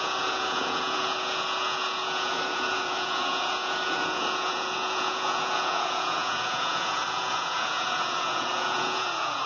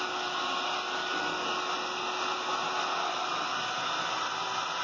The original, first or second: second